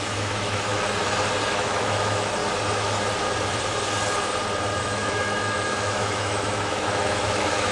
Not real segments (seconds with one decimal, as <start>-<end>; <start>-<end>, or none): 0.0-0.7; 1.5-2.4; 4.8-7.7